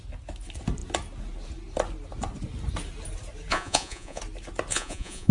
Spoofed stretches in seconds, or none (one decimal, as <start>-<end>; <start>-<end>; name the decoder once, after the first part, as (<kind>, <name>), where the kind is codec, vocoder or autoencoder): 3.5-4.2 (vocoder, Vocos); 4.7-5.3